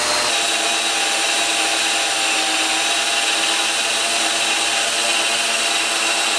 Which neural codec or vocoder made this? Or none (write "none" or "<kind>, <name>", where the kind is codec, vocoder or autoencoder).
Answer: none